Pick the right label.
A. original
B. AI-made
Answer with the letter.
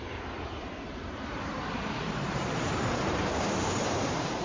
B